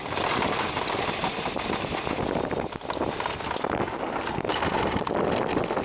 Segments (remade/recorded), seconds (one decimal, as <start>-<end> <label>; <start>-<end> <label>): 0.0-1.2 remade; 1.2-4.7 recorded; 4.7-5.8 remade